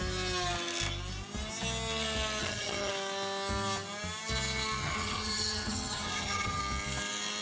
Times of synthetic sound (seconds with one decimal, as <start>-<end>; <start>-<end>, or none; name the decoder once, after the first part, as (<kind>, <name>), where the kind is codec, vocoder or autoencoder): 2.4-2.9 (vocoder, HiFi-GAN); 4.8-6.6